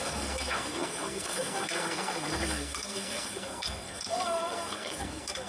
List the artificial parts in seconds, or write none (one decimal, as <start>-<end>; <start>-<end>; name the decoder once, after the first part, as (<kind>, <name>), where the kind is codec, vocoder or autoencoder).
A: 0.0-5.5 (codec, SNAC)